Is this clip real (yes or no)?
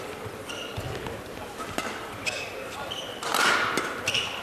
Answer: no